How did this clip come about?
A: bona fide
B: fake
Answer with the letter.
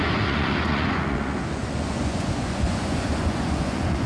B